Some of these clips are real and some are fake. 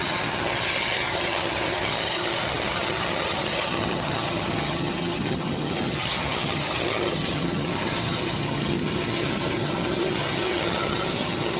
fake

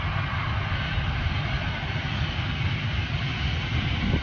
real